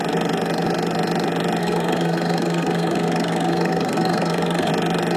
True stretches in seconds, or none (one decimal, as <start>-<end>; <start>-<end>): 0.0-1.6; 4.7-5.2